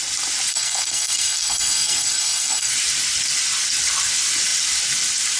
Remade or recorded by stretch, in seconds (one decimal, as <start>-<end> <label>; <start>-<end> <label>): 0.0-0.5 recorded; 0.5-2.7 remade; 2.7-5.4 recorded